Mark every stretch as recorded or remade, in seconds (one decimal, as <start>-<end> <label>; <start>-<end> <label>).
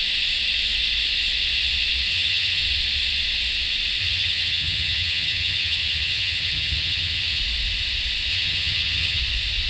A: 0.0-2.1 recorded; 2.1-2.6 remade; 2.6-4.0 recorded; 4.0-7.4 remade; 7.4-8.3 recorded; 8.3-9.2 remade; 9.2-9.7 recorded